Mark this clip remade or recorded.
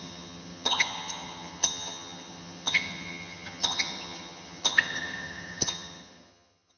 remade